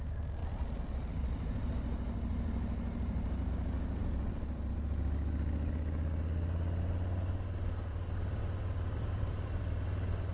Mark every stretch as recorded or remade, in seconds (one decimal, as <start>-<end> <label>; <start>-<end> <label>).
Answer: 0.0-0.4 recorded; 0.4-3.5 remade; 3.5-4.0 recorded; 4.0-4.7 remade; 4.7-7.9 recorded; 7.9-9.6 remade; 9.6-10.3 recorded